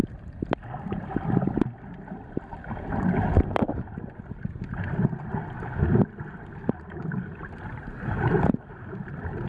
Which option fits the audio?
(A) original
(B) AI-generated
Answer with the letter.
A